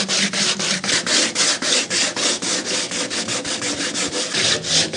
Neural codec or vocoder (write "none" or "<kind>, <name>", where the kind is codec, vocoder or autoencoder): none